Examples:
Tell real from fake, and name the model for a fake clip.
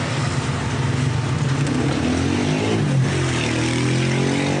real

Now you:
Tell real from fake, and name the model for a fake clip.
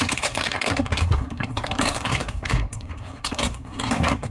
fake, codec, SNAC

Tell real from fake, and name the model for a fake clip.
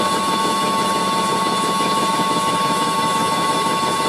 fake, autoencoder, DAC-VAE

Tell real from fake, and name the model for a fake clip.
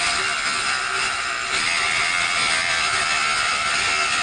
real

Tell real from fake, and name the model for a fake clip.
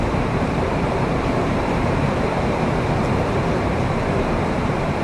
fake, vocoder, BigVGAN v2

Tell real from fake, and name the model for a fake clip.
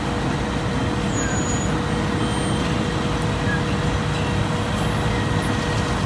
real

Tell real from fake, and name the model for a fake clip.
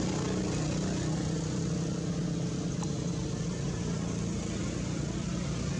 real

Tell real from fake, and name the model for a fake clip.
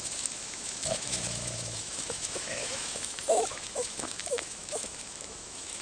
fake, autoencoder, DAC-VAE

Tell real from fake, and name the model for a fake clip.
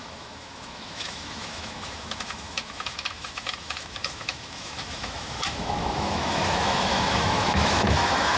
fake, autoencoder, DAC-VAE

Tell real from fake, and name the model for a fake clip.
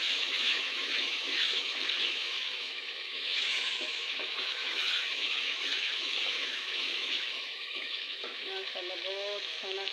fake, autoencoder, DAC-VAE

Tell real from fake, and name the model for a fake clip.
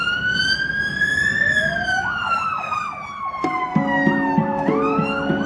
real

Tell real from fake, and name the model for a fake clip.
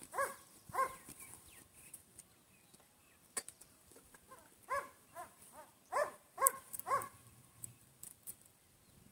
fake, vocoder, BigVGAN v2